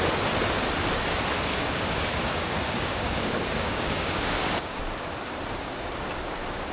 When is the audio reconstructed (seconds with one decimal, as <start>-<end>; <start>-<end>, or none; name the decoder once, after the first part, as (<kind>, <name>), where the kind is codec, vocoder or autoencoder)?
1.5-4.8 (codec, DAC)